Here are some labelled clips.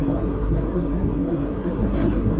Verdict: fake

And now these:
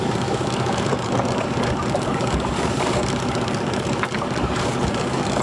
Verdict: fake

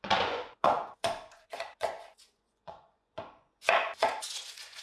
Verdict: fake